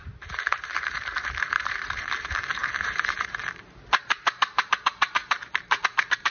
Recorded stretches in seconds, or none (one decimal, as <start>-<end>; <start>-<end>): none